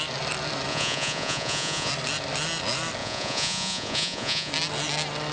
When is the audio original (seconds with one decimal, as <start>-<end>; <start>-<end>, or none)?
0.0-0.7; 1.9-3.0; 4.5-5.3